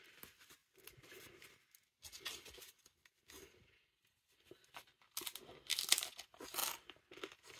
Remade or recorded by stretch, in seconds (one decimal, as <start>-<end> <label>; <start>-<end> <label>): 0.0-7.6 recorded